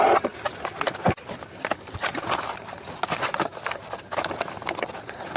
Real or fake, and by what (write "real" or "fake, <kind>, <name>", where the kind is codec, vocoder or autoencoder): real